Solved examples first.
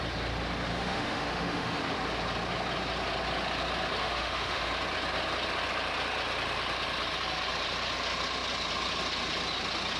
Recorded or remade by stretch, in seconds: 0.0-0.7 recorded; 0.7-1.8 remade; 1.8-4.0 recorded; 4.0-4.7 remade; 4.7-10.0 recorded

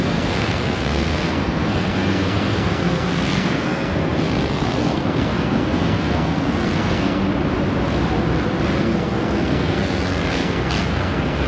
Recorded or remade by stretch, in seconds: 0.0-7.2 remade; 7.2-8.8 recorded; 8.8-11.5 remade

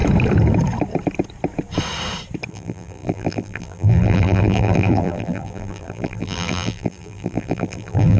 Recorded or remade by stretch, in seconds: 0.0-2.5 recorded; 2.5-8.2 remade

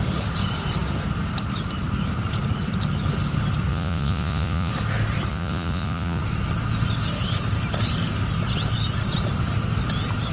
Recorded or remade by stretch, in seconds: 0.0-3.7 recorded; 3.7-4.7 remade; 4.7-5.3 recorded; 5.3-6.2 remade; 6.2-10.3 recorded

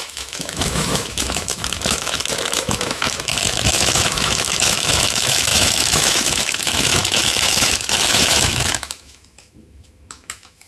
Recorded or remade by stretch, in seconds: 0.0-10.7 remade

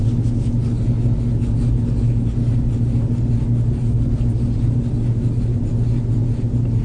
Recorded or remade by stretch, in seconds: 0.0-6.8 recorded

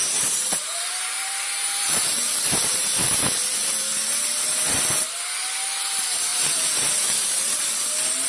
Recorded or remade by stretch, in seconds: 0.0-3.1 remade; 3.1-6.3 recorded; 6.3-7.6 remade; 7.6-8.3 recorded

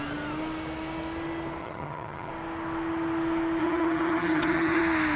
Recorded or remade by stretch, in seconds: 0.0-1.6 recorded; 1.6-2.3 remade; 2.3-3.6 recorded; 3.6-4.8 remade; 4.8-5.2 recorded